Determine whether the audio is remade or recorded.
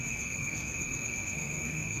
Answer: remade